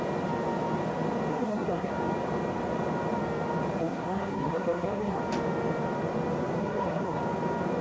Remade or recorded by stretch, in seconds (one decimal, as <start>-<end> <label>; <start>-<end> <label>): 0.0-1.3 recorded; 1.3-1.9 remade; 1.9-3.8 recorded; 3.8-5.2 remade; 5.2-6.6 recorded; 6.6-7.2 remade; 7.2-7.8 recorded